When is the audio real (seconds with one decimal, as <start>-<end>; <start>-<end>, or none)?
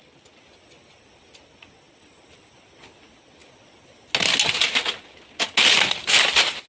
0.0-6.7